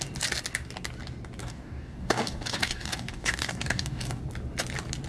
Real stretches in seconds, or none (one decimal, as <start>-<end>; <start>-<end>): 0.0-1.4; 4.2-5.1